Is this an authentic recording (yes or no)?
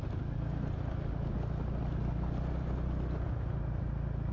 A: yes